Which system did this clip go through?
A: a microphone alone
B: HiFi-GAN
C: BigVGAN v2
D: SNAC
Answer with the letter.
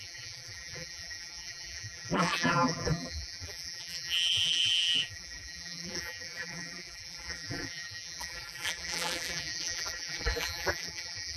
C